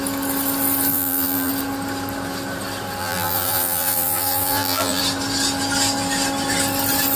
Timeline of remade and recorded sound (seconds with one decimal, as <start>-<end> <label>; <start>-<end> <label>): 0.0-0.9 recorded; 0.9-1.5 remade; 1.5-3.0 recorded; 3.0-5.0 remade; 5.0-7.2 recorded